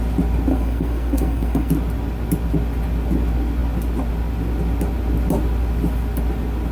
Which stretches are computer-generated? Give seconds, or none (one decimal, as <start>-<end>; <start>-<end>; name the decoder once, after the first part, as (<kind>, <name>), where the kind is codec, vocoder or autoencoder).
0.5-1.7 (codec, SNAC)